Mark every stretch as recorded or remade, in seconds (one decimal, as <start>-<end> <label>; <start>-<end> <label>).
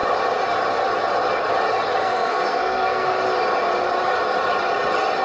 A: 0.0-2.0 recorded; 2.0-3.1 remade; 3.1-5.2 recorded